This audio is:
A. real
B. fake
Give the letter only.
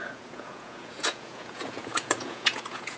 B